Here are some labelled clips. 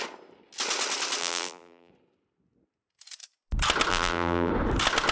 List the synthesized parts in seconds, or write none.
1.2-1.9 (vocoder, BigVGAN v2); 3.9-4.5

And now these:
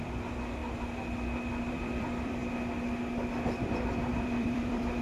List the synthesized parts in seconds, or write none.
0.0-0.6 (vocoder, BigVGAN v2); 1.7-2.4; 4.1-5.0

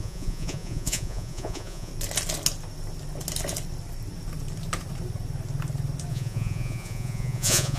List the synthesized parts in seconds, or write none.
0.0-1.9 (vocoder, Vocos); 6.1-7.8

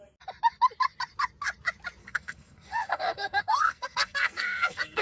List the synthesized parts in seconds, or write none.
2.0-5.0 (codec, SNAC)